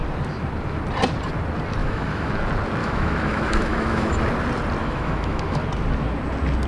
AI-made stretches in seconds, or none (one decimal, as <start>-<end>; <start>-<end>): 1.8-2.3; 2.8-4.2; 4.8-5.6